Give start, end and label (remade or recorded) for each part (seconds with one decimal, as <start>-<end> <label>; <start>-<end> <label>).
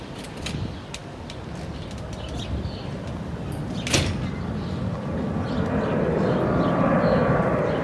0.0-7.8 recorded